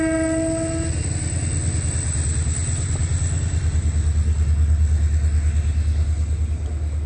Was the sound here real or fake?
real